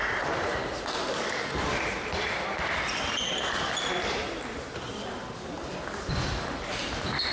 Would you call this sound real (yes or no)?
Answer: no